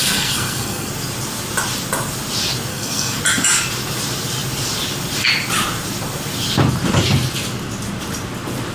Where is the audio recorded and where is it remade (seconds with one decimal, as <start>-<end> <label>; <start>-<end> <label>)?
0.0-0.9 remade; 0.9-2.7 recorded; 2.7-3.2 remade; 3.2-8.7 recorded